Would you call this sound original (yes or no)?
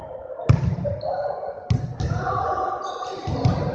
yes